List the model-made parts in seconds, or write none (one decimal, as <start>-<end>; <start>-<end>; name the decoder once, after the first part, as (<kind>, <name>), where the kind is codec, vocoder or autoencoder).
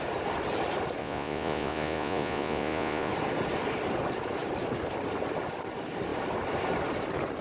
1.0-3.1 (vocoder, Vocos)